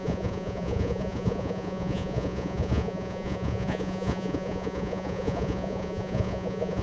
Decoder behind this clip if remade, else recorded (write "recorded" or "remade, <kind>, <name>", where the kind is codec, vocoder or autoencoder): remade, vocoder, Vocos